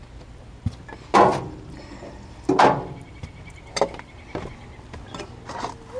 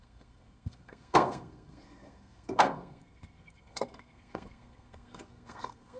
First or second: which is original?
first